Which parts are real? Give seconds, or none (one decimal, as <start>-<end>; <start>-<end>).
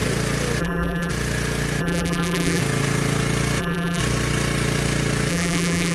0.0-0.6; 1.1-1.8; 2.6-3.6; 4.0-5.3